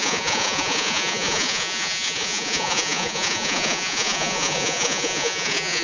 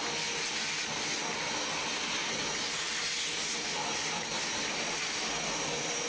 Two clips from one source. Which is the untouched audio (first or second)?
second